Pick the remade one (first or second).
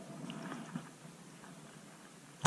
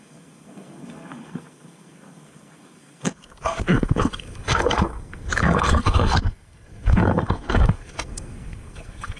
second